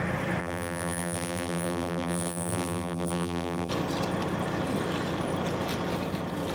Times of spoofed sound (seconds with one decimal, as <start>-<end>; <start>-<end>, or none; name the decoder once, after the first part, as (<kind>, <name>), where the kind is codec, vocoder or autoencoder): 0.4-3.7 (vocoder, BigVGAN v2)

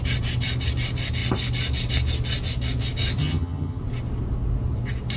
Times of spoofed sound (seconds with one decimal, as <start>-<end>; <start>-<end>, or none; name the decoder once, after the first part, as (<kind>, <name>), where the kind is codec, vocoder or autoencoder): 3.2-3.8 (vocoder, HiFi-GAN)